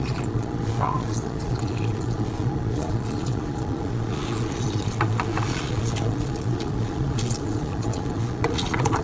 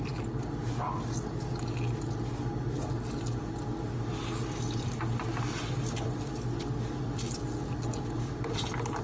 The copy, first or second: first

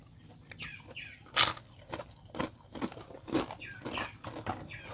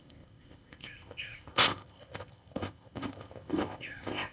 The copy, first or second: second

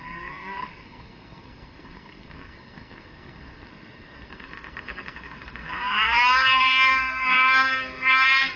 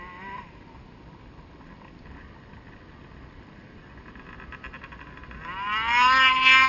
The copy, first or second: first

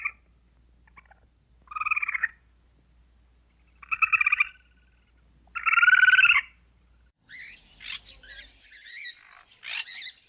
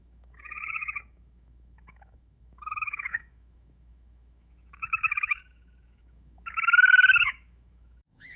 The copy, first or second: second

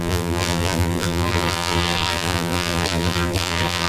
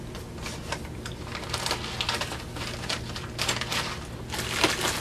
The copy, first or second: first